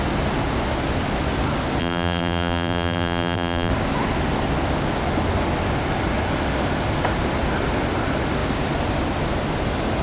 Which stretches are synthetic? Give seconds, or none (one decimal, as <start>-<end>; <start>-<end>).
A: 1.8-3.7